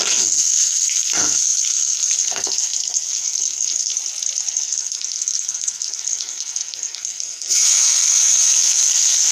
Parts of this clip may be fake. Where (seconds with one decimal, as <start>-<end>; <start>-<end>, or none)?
0.0-3.9; 4.5-9.3